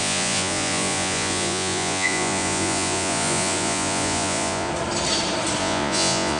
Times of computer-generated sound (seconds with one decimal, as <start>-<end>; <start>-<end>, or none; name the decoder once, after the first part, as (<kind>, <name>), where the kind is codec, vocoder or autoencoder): 0.0-4.7 (vocoder, Vocos); 5.6-6.4